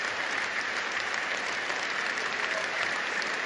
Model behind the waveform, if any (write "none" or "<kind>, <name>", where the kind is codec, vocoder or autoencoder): vocoder, BigVGAN v2